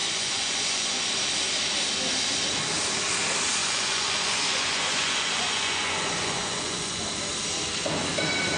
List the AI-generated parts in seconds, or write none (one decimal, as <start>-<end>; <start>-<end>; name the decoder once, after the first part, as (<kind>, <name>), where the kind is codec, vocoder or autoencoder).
0.0-1.0 (vocoder, Vocos); 3.6-7.0